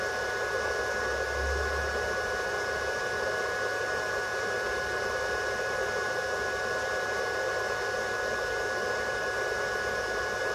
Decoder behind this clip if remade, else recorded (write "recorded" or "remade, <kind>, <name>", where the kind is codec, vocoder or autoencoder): recorded